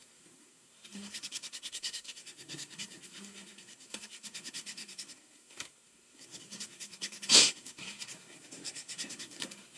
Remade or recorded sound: remade